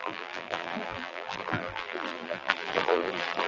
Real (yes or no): no